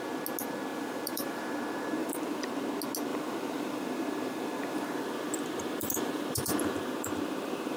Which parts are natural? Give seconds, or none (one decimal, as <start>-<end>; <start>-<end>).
0.0-0.7; 1.4-2.0; 2.5-3.1